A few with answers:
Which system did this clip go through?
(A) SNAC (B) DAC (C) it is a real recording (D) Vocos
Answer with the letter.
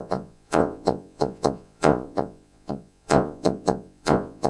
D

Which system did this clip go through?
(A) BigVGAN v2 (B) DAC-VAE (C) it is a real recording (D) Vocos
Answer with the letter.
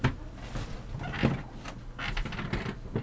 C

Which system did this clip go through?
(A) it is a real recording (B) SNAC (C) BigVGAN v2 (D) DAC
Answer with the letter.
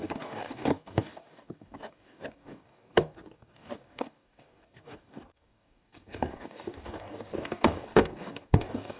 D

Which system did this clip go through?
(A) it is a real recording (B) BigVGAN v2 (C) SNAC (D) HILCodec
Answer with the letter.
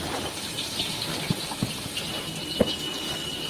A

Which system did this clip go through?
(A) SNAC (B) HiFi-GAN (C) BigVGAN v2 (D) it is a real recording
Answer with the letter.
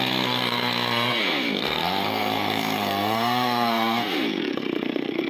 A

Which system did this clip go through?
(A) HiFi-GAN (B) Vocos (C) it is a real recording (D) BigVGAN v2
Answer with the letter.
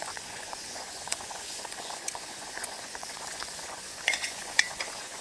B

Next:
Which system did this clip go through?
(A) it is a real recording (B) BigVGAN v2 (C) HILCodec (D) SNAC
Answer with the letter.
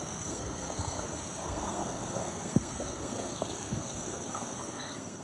D